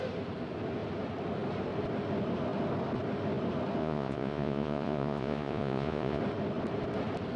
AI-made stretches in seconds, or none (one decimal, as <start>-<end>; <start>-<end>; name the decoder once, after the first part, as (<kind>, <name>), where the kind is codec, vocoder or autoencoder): 3.8-6.2 (vocoder, Vocos)